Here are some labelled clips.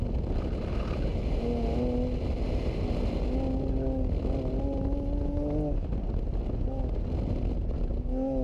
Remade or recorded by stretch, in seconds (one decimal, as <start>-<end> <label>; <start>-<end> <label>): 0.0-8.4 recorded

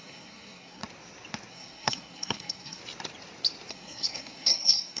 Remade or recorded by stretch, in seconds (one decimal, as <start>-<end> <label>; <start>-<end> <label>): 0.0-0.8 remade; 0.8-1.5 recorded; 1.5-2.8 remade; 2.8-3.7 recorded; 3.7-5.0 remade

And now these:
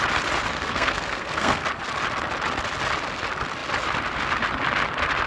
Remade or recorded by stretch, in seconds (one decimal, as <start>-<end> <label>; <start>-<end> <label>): 0.0-0.5 recorded; 0.5-1.7 remade; 1.7-5.3 recorded

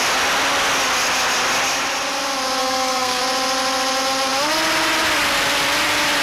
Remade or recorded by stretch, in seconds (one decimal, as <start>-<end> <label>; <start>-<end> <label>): 0.0-2.6 recorded; 2.6-3.2 remade; 3.2-6.2 recorded

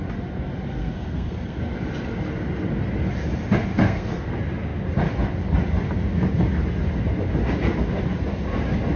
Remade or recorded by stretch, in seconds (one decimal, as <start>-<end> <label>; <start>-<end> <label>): 0.0-0.8 recorded; 0.8-1.6 remade; 1.6-3.7 recorded; 3.7-4.3 remade; 4.3-9.0 recorded

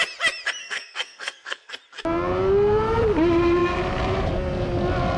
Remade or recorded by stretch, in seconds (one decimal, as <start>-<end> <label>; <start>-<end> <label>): 0.0-0.6 recorded; 0.6-1.7 remade; 1.7-5.2 recorded